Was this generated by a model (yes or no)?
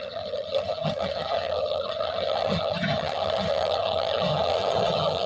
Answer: yes